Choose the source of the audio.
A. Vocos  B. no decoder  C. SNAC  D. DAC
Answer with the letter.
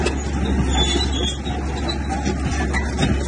B